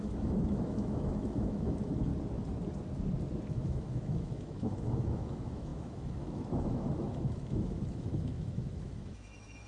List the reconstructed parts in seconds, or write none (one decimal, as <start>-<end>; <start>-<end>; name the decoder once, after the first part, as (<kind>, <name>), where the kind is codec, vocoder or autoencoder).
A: 0.0-2.1 (autoencoder, DAC-VAE); 3.5-9.7

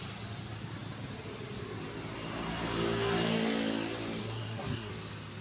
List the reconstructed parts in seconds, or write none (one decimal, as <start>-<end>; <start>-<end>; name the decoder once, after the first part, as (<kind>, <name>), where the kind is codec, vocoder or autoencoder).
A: 4.2-4.9 (codec, SNAC)

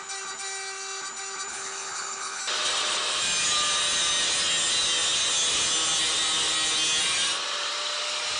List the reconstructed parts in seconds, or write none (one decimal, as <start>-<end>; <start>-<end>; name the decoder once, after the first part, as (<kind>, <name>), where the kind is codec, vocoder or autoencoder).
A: 1.5-2.4 (codec, HILCodec)

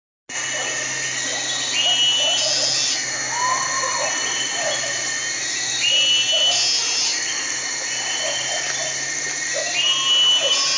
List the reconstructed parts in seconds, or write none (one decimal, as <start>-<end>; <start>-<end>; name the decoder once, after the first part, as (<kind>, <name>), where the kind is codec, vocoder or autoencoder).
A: none

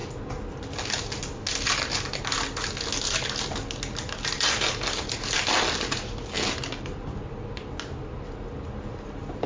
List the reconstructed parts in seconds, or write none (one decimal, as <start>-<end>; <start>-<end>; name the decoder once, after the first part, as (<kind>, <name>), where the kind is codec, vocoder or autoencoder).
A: none

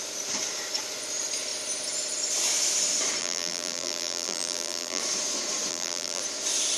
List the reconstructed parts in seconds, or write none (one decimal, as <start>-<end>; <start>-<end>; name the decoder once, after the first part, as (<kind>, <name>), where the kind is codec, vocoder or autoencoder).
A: 3.2-5.0 (vocoder, BigVGAN v2); 5.7-6.2

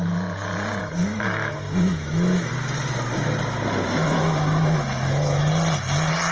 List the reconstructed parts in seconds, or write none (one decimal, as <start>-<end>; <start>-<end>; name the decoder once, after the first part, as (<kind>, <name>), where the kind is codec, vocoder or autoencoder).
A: 0.8-2.5 (autoencoder, DAC-VAE); 4.0-5.5

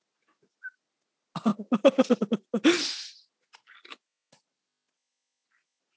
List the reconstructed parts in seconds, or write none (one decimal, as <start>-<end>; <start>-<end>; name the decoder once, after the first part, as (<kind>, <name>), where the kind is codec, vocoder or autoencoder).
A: none